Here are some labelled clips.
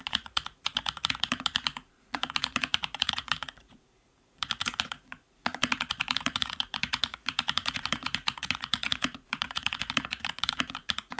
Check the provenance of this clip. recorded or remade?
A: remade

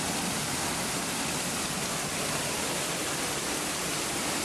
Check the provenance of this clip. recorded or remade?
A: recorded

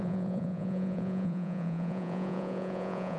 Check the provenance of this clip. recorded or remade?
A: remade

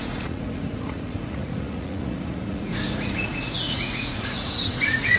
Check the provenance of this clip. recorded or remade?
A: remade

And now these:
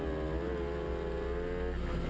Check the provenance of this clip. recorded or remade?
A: recorded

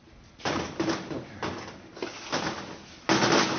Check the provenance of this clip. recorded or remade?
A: recorded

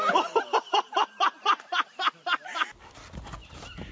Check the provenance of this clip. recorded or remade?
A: recorded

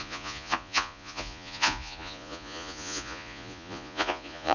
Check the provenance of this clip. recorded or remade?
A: remade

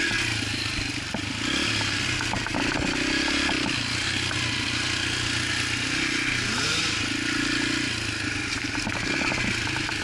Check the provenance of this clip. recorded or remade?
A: recorded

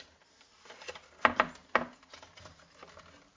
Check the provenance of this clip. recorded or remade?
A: recorded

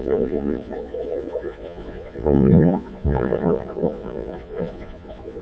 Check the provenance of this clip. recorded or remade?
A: remade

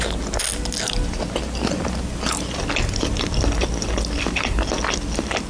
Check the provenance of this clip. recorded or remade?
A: recorded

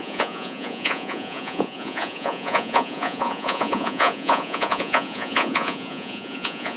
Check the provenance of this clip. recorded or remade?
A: remade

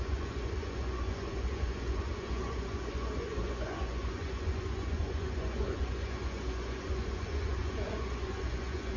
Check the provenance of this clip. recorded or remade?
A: remade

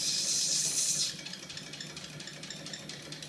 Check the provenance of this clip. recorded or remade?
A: recorded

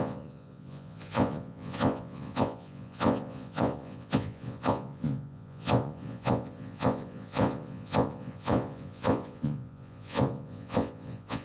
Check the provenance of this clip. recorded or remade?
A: remade